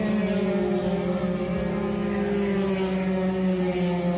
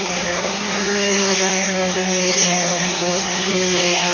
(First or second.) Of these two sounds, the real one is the first